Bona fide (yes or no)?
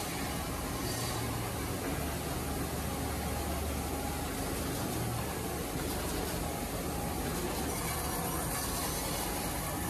yes